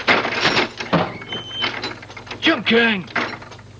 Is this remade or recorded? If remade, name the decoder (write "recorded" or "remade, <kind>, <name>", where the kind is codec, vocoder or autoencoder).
recorded